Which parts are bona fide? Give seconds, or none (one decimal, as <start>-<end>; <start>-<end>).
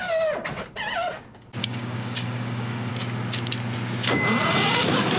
0.0-1.6; 2.9-5.2